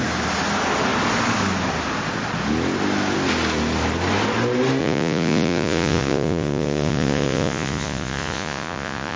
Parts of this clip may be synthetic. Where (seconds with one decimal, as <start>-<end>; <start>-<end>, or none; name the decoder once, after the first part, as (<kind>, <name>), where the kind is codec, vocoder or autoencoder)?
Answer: 4.8-9.2 (vocoder, Vocos)